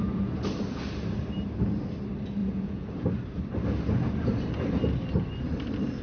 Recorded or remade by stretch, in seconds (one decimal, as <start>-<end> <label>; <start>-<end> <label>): 0.0-2.4 recorded; 2.4-2.9 remade; 2.9-6.0 recorded

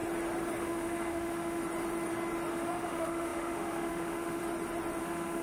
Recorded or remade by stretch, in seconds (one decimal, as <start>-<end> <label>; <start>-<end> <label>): 0.0-0.6 recorded; 0.6-1.6 remade; 1.6-2.5 recorded; 2.5-4.4 remade; 4.4-5.0 recorded; 5.0-5.4 remade

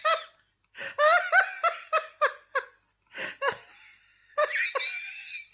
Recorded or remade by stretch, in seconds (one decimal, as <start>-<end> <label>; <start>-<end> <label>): 0.0-5.5 recorded

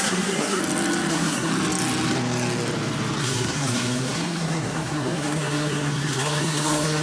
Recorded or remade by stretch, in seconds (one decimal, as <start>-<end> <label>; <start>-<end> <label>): 0.0-0.6 remade; 0.6-1.1 recorded; 1.1-1.5 remade; 1.5-3.2 recorded; 3.2-7.0 remade